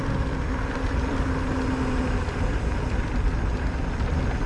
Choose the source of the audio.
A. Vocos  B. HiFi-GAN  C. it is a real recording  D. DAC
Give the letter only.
C